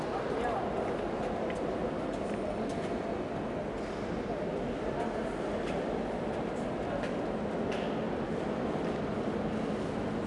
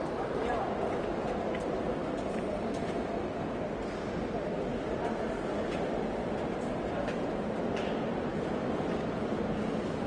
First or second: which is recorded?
first